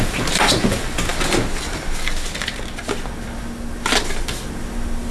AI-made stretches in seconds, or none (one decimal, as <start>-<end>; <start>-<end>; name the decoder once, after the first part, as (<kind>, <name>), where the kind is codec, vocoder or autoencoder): none